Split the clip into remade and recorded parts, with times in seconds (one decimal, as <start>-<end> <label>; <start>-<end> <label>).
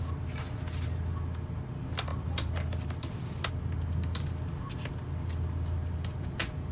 0.0-2.1 recorded; 2.1-3.5 remade; 3.5-6.7 recorded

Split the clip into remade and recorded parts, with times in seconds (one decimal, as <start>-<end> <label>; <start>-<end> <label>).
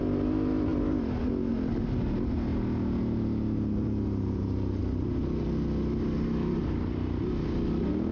0.0-8.1 recorded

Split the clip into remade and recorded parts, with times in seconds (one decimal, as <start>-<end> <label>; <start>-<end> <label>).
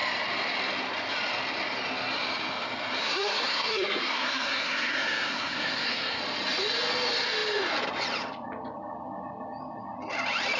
0.0-3.0 recorded; 3.0-6.2 remade; 6.2-10.6 recorded